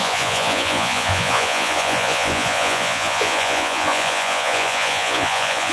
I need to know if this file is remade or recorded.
remade